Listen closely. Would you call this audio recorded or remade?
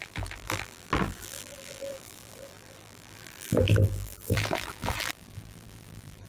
remade